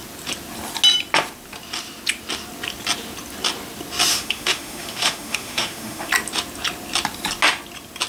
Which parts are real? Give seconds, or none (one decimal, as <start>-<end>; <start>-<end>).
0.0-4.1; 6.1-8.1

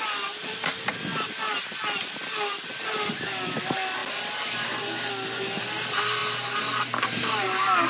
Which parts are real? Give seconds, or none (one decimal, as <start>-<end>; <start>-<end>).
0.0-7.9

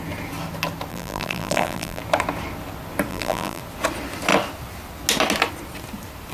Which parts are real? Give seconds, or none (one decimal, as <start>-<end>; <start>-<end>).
0.0-0.9; 2.0-3.1; 3.6-6.3

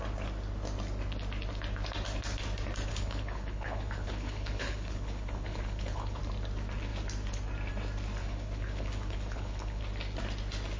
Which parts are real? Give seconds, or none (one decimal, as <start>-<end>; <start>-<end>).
0.0-2.9; 6.2-8.2; 9.8-10.8